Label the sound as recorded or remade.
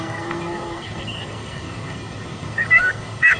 remade